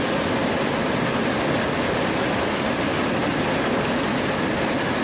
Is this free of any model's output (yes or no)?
yes